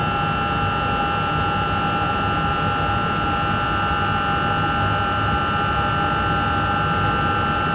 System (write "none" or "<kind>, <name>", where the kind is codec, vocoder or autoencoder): none